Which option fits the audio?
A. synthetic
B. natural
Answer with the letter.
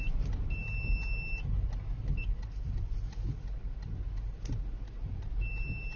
B